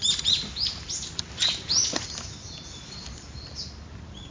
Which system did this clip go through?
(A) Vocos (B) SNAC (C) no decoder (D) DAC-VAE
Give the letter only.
C